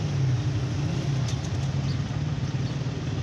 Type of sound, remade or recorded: recorded